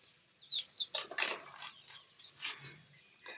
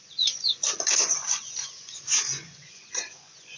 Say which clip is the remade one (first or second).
second